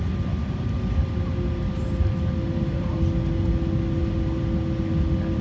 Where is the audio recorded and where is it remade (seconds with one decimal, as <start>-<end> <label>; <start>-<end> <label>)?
0.0-5.4 recorded